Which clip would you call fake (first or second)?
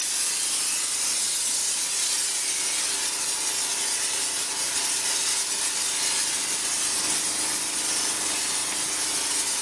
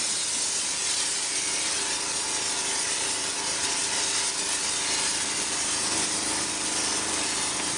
second